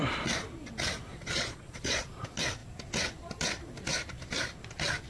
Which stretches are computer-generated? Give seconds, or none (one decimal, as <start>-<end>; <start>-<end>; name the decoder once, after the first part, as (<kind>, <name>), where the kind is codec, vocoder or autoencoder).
1.1-2.0 (vocoder, Vocos)